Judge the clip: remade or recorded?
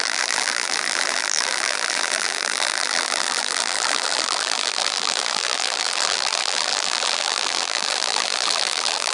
remade